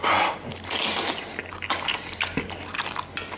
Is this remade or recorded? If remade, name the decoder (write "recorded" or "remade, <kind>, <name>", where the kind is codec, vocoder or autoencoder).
recorded